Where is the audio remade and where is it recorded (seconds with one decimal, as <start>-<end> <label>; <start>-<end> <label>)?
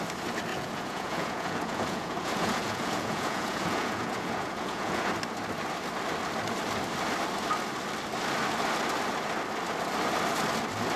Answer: 0.0-0.5 recorded; 0.5-5.1 remade; 5.1-11.0 recorded